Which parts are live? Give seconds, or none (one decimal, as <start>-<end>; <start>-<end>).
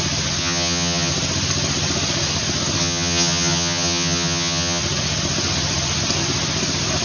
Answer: 0.0-0.4; 1.1-2.8; 4.8-7.0